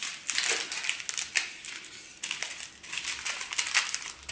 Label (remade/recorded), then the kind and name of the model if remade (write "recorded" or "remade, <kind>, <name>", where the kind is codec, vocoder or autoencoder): recorded